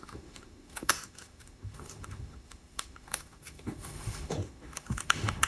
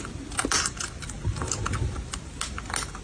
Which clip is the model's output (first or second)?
first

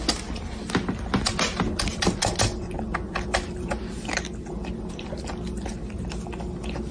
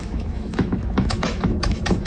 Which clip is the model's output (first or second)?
second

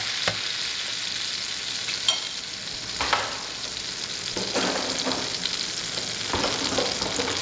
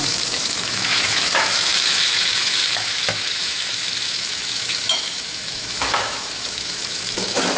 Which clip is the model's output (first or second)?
second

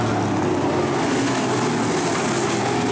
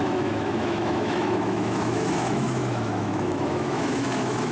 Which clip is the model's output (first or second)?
second